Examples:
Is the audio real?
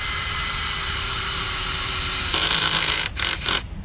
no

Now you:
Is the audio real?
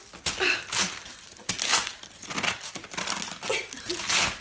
yes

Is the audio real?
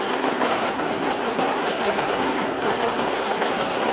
no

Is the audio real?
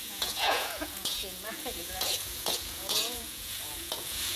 no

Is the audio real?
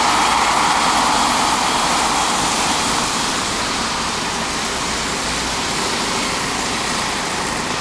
yes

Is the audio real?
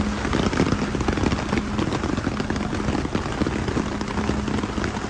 yes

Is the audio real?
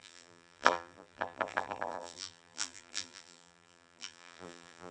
no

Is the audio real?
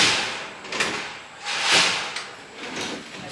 yes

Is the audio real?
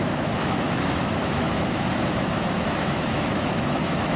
no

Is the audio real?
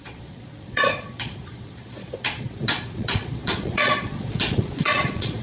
no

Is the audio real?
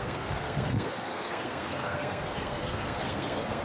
no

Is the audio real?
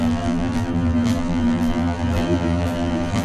no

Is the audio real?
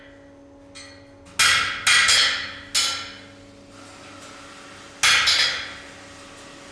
yes